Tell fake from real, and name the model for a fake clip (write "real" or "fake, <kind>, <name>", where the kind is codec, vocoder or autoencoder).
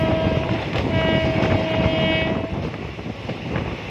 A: real